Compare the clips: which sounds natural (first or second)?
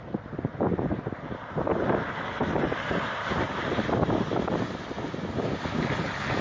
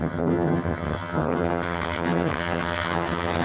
first